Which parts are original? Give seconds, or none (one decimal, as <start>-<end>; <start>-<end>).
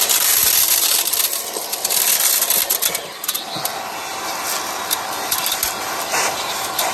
0.0-6.9